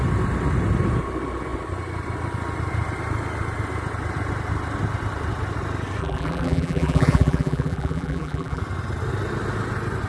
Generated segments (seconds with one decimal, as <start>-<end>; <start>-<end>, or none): 6.0-8.6